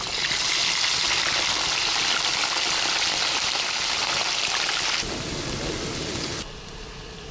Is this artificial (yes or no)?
no